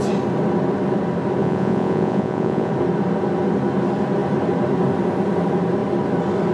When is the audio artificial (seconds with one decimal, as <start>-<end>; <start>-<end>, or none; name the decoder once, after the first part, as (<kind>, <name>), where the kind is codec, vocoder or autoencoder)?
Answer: 1.4-2.7 (vocoder, Vocos)